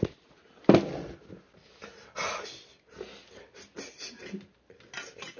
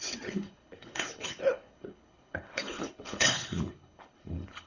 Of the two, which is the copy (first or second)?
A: second